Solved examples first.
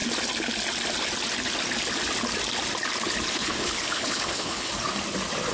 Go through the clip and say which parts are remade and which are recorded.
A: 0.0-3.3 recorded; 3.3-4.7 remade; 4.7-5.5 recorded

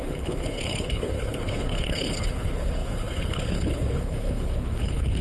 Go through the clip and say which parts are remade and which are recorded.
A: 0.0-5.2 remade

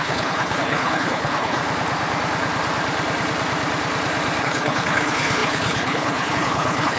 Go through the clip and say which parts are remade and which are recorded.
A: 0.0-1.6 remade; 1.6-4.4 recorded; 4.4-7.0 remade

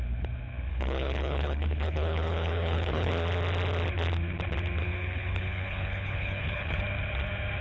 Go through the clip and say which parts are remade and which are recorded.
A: 0.0-0.7 recorded; 0.7-3.1 remade; 3.1-4.8 recorded; 4.8-6.8 remade; 6.8-7.6 recorded

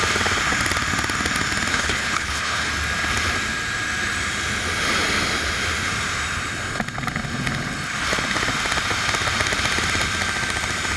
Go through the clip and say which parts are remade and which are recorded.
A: 0.0-1.7 recorded; 1.7-2.7 remade; 2.7-11.0 recorded

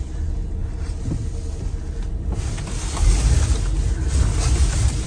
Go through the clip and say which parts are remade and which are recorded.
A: 0.0-5.1 recorded

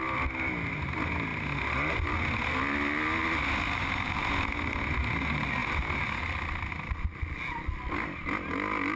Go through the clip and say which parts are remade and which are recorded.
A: 0.0-9.0 recorded